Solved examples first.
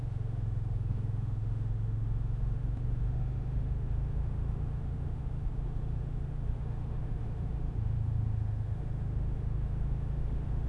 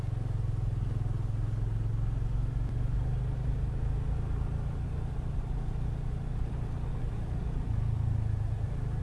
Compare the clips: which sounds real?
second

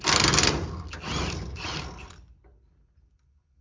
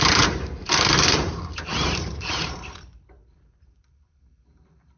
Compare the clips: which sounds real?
first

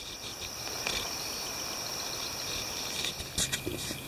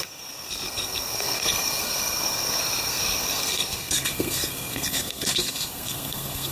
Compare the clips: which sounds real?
first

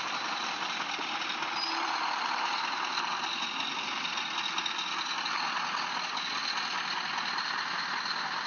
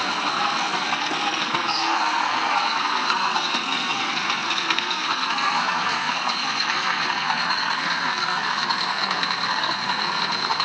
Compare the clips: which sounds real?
first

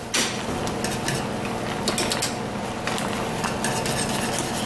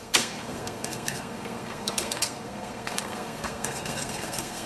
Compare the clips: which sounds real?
first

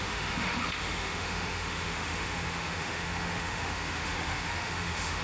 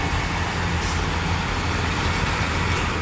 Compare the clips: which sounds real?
second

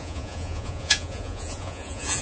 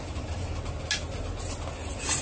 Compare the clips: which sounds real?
second